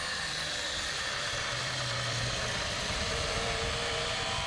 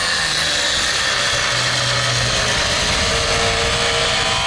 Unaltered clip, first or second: second